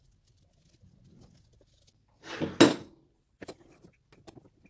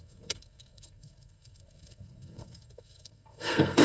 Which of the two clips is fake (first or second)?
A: second